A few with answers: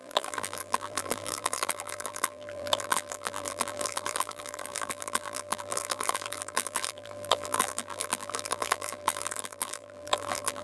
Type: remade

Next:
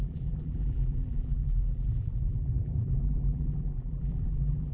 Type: remade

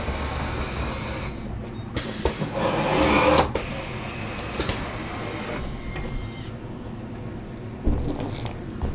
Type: recorded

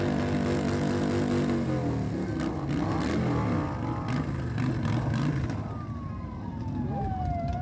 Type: recorded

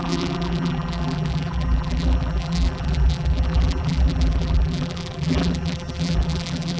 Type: remade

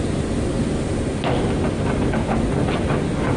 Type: recorded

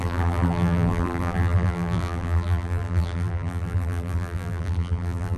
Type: remade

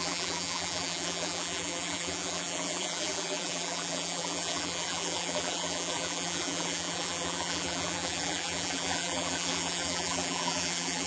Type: remade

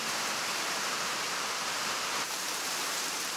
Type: remade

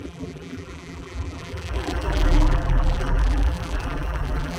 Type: remade